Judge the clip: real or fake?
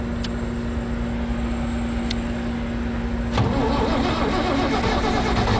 real